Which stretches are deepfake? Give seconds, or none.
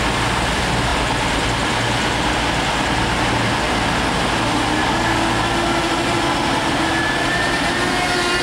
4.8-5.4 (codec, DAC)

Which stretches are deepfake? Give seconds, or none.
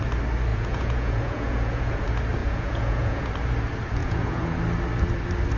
0.5-1.9 (vocoder, Vocos); 2.4-3.3; 4.0-4.6